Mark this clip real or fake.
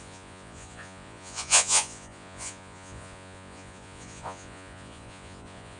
fake